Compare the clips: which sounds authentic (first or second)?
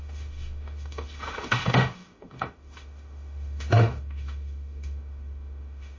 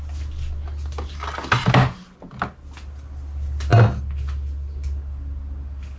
second